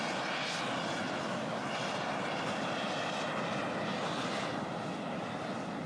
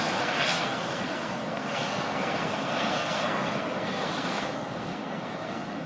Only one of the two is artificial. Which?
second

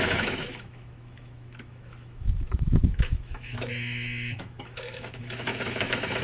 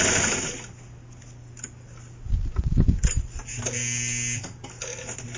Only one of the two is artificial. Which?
first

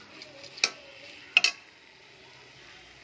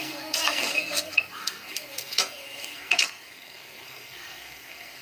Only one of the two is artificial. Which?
second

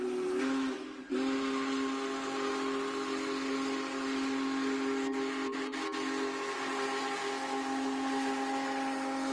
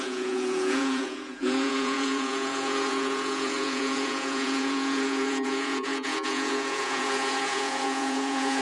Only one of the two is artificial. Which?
second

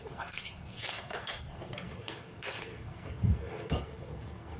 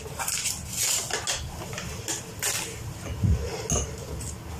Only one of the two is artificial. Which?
first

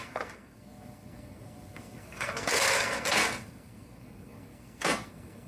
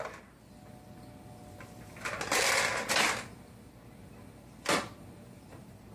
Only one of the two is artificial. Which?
first